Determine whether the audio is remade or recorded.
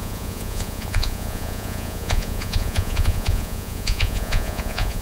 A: remade